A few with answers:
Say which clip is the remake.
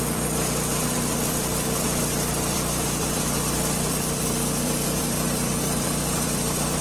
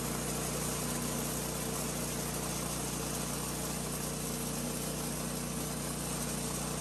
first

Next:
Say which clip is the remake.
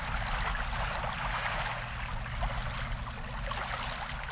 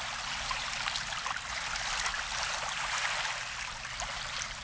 second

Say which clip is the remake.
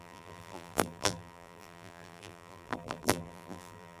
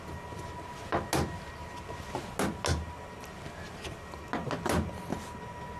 first